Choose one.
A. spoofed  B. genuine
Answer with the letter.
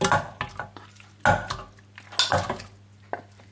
B